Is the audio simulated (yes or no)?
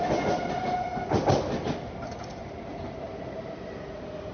no